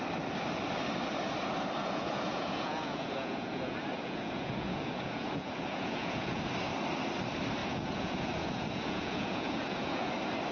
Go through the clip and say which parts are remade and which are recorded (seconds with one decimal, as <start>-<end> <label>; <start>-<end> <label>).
0.0-1.8 recorded; 1.8-6.4 remade; 6.4-7.6 recorded; 7.6-10.1 remade; 10.1-10.5 recorded